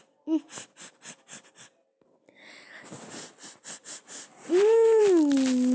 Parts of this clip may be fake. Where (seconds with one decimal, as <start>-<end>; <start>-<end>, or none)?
4.0-5.0